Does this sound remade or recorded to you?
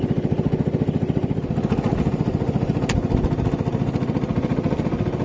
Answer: recorded